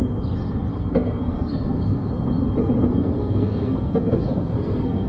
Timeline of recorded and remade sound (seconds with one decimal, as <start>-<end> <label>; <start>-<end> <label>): 0.0-0.7 recorded; 0.7-2.1 remade; 2.1-2.9 recorded; 2.9-5.1 remade